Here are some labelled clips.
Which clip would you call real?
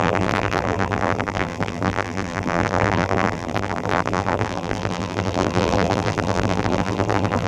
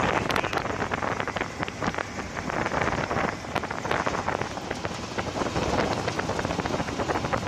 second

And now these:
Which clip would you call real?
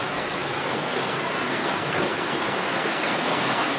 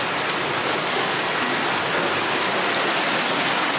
second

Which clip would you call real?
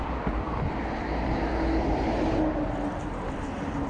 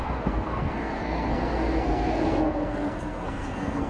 first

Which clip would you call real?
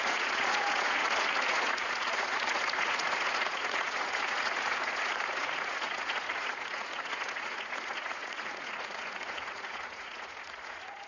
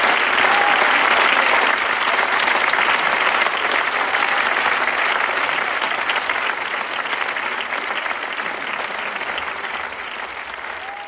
second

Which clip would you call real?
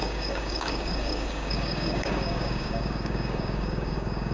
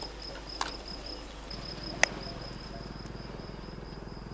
second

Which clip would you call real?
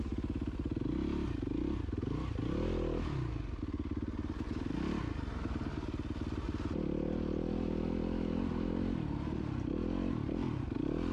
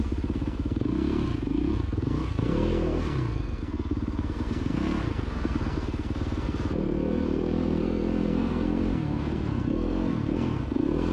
first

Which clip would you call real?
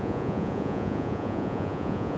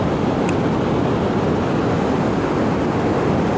second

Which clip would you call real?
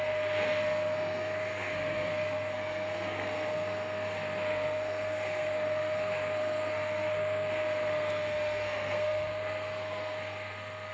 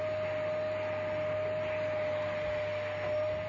second